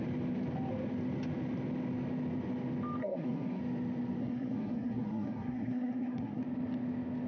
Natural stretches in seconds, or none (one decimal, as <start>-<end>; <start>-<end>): 0.0-3.0; 3.6-4.2; 6.4-7.3